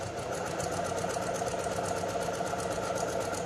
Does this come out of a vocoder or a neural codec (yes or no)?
no